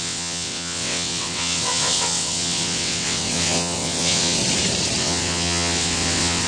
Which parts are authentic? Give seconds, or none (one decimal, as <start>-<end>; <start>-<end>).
4.4-5.0